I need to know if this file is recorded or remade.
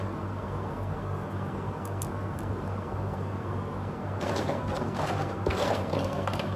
remade